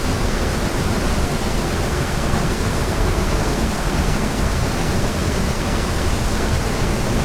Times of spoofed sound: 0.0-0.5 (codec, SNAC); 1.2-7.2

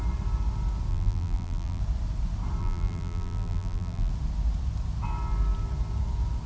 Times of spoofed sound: 0.9-1.8 (vocoder, BigVGAN v2); 2.6-4.1

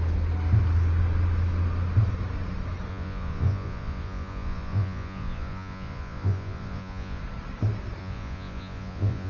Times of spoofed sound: 2.9-7.2 (vocoder, Vocos); 8.0-9.3

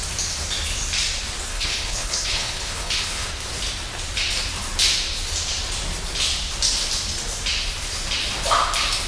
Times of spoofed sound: 1.5-3.3 (codec, HILCodec)

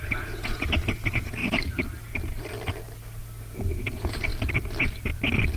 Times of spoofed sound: 0.0-1.4 (vocoder, Vocos); 3.4-4.3